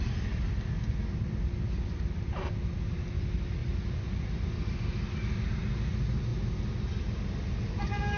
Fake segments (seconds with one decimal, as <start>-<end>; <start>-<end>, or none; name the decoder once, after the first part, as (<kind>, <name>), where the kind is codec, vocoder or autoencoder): none